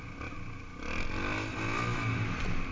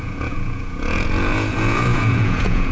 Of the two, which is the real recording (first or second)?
first